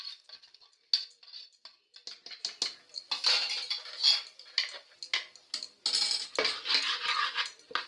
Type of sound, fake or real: real